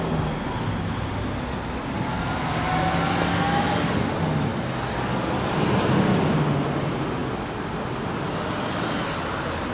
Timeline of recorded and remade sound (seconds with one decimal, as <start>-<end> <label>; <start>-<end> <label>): 0.0-9.7 recorded